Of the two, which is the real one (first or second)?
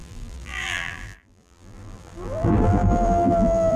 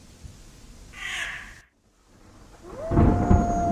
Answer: second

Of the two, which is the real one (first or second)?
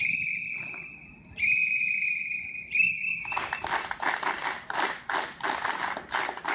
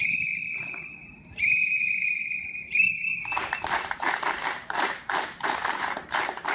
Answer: first